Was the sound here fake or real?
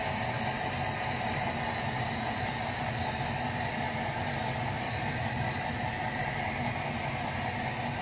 real